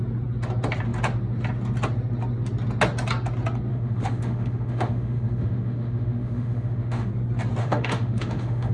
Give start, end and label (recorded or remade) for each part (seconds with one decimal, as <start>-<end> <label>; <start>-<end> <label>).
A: 0.0-3.7 recorded; 3.7-7.1 remade; 7.1-7.6 recorded; 7.6-8.7 remade